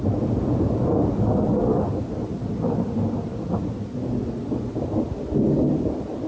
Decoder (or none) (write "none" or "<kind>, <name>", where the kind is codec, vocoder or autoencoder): none